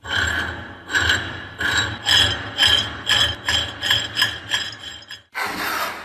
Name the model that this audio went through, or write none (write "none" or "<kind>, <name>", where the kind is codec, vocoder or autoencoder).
none